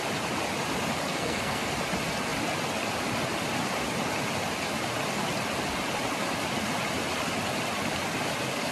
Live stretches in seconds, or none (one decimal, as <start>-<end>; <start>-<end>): 0.0-1.1; 1.7-8.7